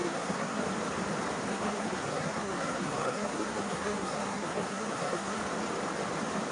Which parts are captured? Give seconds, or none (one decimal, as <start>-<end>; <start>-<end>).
0.6-1.5; 5.4-6.5